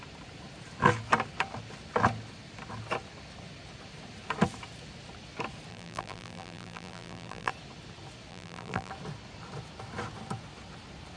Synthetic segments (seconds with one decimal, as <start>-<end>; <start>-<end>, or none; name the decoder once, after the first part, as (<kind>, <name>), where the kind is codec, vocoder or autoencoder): 5.7-7.5 (vocoder, BigVGAN v2); 8.3-8.9